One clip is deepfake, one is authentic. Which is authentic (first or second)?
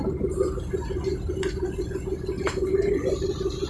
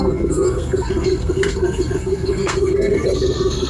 first